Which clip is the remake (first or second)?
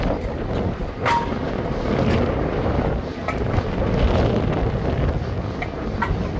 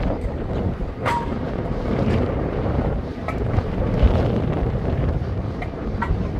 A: second